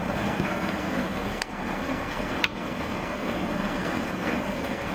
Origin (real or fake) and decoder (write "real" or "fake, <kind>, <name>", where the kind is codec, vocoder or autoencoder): fake, codec, SNAC